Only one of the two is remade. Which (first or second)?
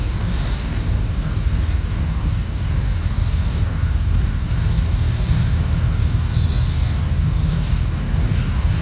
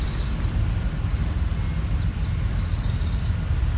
first